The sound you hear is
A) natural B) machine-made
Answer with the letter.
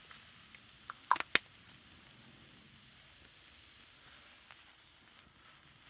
A